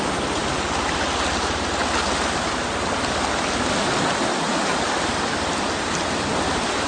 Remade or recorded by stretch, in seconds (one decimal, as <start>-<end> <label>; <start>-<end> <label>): 0.0-6.9 recorded